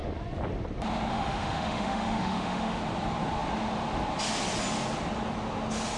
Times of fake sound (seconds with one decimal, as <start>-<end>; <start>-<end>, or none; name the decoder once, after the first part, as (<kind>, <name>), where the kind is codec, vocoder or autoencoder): 1.1-2.8 (autoencoder, DAC-VAE)